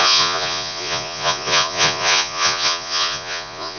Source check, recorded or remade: remade